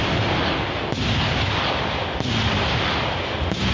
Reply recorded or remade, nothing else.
recorded